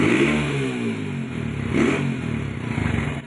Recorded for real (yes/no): yes